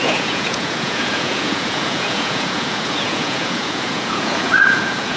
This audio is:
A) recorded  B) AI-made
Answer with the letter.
B